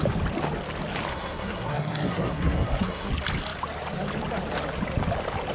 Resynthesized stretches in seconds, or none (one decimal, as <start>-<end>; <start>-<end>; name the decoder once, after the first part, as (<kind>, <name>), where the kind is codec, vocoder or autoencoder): 1.1-3.1 (codec, SNAC)